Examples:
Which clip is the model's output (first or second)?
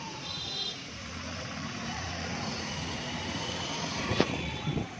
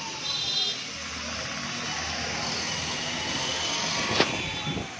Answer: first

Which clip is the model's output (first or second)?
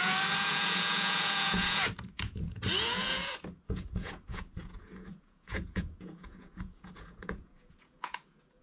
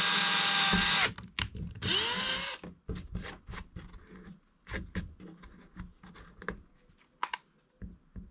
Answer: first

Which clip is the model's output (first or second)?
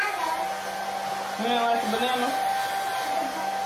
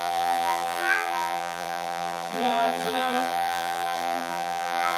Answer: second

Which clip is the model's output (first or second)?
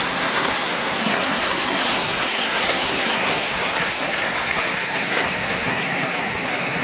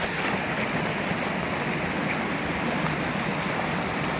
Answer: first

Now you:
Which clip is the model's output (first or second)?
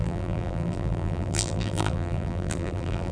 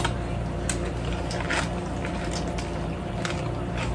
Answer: first